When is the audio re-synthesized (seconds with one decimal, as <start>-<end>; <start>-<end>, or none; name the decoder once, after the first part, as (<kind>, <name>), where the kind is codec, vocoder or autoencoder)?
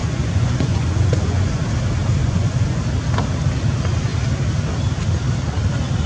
0.0-1.6 (vocoder, Vocos); 2.2-2.8